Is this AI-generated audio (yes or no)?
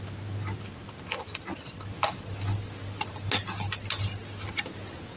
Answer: no